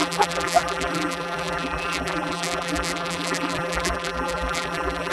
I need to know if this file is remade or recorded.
remade